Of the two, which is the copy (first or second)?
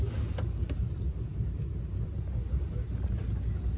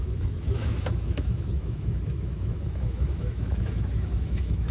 second